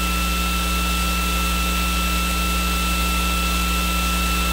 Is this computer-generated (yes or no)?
no